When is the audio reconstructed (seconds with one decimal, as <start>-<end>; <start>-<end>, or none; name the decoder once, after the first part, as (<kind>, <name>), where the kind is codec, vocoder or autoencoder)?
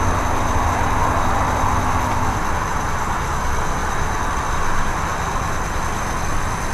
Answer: none